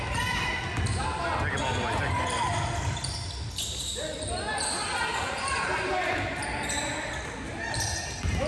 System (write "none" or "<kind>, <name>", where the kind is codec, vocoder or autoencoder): none